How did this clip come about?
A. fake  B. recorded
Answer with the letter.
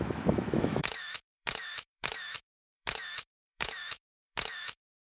A